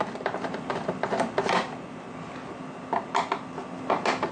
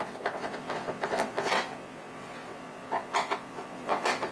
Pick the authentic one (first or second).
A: first